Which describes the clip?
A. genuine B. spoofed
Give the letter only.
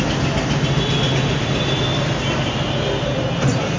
A